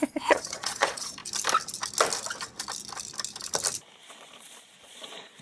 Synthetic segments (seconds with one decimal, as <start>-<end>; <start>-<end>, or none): 0.0-1.2; 4.1-5.4